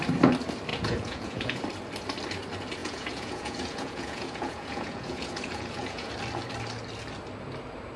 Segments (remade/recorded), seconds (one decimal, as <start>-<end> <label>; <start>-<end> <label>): 0.0-0.7 recorded; 0.7-1.6 remade; 1.6-2.8 recorded; 2.8-6.1 remade; 6.1-8.0 recorded